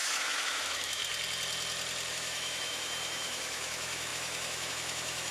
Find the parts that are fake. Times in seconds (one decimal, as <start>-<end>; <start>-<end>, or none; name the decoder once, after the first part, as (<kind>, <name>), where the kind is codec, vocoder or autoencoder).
0.0-1.0 (autoencoder, DAC-VAE); 2.1-5.3